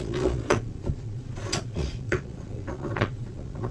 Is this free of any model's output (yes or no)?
no